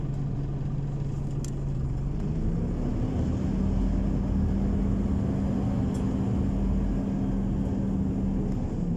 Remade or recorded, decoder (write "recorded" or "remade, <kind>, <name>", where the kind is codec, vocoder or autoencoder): recorded